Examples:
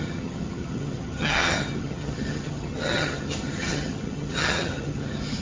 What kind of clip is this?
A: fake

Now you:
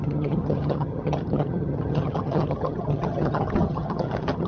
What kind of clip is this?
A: fake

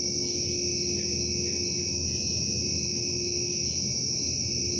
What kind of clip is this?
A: real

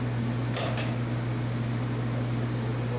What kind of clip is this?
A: real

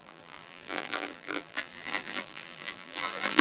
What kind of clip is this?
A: fake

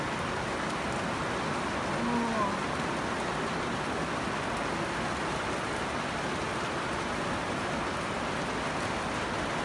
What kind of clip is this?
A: real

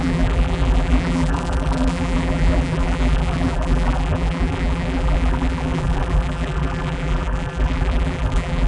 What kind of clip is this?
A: fake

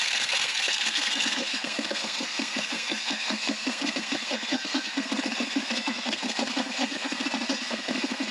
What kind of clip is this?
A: fake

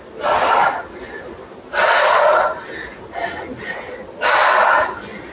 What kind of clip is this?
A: real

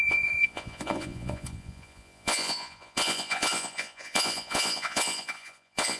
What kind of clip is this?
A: fake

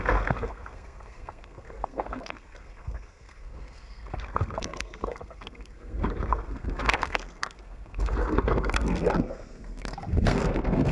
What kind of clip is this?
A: fake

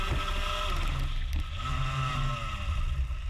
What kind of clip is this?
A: real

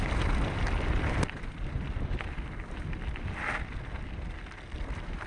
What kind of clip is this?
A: real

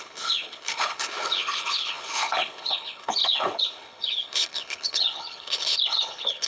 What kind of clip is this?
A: fake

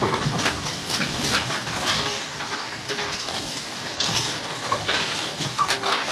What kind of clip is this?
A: fake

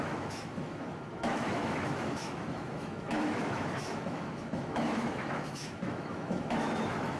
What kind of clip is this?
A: fake